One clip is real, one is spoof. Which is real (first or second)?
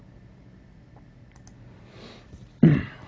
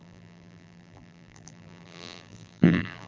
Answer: first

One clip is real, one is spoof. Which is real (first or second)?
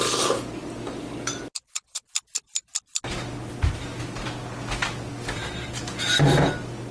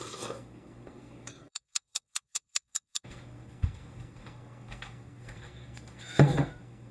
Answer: first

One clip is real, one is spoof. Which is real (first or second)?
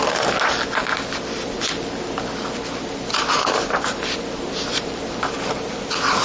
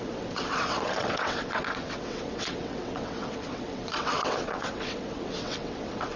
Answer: first